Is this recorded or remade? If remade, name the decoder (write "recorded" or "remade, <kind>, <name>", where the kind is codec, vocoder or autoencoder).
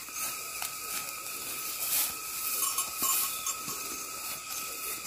recorded